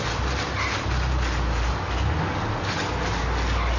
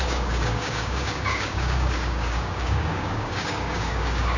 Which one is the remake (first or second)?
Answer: second